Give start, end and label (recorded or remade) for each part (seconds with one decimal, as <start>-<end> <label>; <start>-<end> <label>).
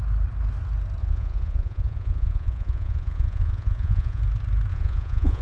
0.0-1.0 recorded; 1.0-4.2 remade; 4.2-4.7 recorded; 4.7-5.4 remade